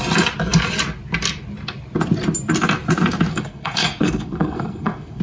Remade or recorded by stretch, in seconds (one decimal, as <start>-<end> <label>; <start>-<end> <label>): 0.0-3.3 recorded; 3.3-5.2 remade